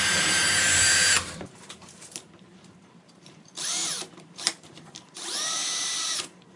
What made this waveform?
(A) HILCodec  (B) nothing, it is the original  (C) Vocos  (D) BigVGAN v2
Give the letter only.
D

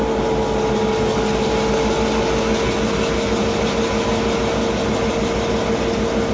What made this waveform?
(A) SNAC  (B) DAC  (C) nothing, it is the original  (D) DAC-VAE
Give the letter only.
C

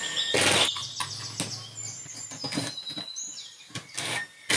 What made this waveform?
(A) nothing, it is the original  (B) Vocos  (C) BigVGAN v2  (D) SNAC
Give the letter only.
A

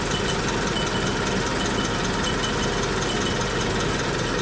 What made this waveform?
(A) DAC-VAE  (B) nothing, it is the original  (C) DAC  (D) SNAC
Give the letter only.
B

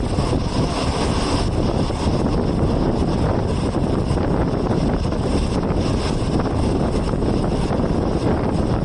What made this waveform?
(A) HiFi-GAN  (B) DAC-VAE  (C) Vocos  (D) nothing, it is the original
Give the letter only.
D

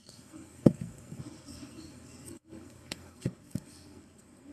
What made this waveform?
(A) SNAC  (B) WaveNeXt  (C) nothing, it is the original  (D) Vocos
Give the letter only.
A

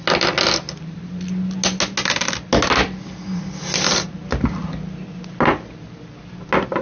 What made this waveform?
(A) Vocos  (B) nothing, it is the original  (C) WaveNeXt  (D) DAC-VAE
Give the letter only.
B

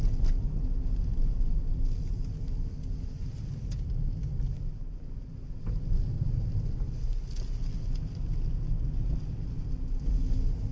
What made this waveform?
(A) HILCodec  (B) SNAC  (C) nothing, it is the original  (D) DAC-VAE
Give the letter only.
C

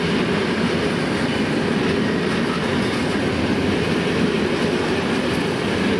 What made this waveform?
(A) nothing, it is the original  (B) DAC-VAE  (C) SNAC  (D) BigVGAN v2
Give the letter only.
A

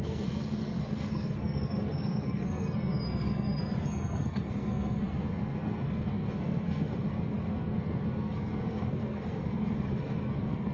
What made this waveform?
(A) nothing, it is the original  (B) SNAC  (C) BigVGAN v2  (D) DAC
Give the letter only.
B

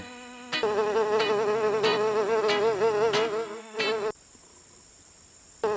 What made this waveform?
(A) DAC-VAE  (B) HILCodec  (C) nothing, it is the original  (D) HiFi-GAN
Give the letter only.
C